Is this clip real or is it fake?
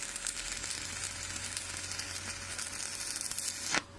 real